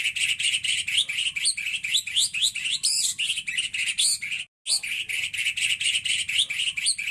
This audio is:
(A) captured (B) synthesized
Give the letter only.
A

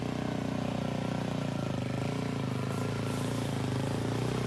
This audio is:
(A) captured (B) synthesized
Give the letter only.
A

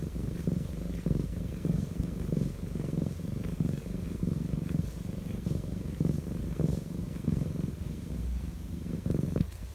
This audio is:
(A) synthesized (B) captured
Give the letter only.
A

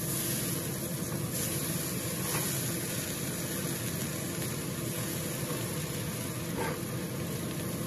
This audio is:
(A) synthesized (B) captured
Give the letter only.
B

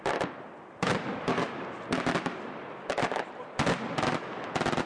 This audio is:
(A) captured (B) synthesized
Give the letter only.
A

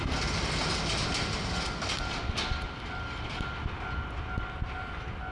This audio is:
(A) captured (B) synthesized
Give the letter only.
A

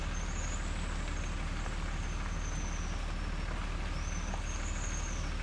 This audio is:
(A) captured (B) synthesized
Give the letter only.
A